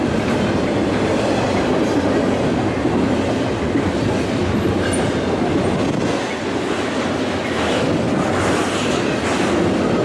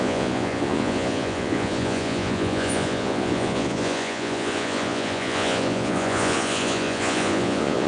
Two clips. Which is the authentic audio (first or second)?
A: first